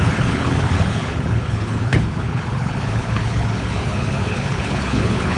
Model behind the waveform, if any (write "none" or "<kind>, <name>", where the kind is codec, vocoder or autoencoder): codec, HILCodec